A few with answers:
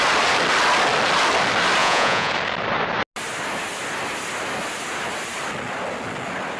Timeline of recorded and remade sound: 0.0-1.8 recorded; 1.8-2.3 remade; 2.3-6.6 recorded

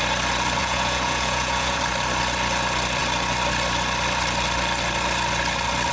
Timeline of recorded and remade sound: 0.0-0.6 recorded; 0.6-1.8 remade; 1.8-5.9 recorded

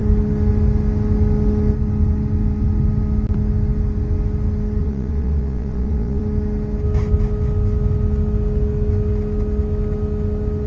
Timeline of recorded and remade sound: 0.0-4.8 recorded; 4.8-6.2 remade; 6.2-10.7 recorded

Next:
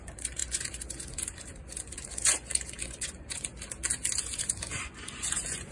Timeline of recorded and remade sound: 0.0-3.5 remade; 3.5-4.2 recorded; 4.2-5.7 remade

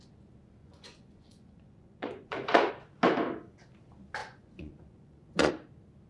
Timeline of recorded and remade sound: 0.0-0.6 recorded; 0.6-2.7 remade; 2.7-4.2 recorded; 4.2-5.5 remade; 5.5-6.1 recorded

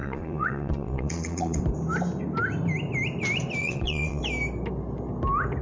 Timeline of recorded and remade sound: 0.0-1.6 remade; 1.6-3.6 recorded; 3.6-4.2 remade; 4.2-5.6 recorded

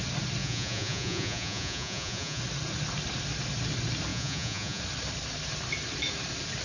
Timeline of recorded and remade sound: 0.0-0.4 recorded; 0.4-2.4 remade; 2.4-4.1 recorded; 4.1-4.8 remade; 4.8-6.6 recorded

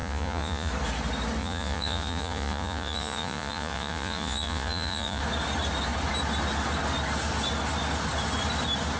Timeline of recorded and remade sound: 0.0-0.7 remade; 0.7-1.4 recorded; 1.4-5.2 remade; 5.2-9.0 recorded